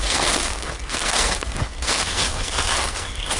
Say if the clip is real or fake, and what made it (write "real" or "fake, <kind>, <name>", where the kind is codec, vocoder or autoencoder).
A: fake, codec, SNAC